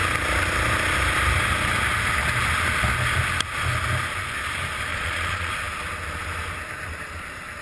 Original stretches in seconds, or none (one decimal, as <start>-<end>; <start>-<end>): 0.0-4.9; 5.5-7.6